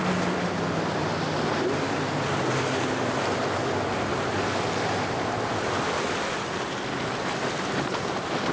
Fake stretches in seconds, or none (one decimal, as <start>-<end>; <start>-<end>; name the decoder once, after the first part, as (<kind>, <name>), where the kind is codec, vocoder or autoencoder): none